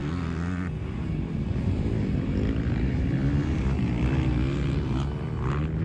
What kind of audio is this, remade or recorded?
recorded